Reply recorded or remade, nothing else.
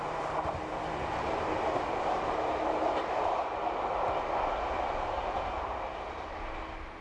recorded